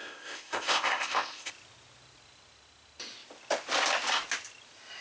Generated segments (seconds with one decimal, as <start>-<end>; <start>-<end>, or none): 0.0-1.5